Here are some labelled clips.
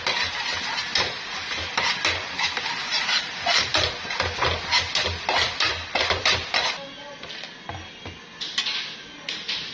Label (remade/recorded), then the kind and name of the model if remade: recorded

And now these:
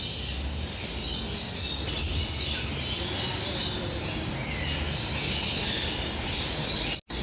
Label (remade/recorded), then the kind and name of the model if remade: recorded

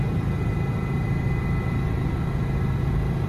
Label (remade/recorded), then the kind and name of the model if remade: recorded